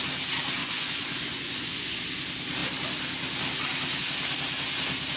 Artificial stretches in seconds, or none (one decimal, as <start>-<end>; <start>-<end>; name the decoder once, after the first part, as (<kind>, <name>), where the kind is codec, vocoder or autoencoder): 0.6-2.0 (vocoder, Vocos)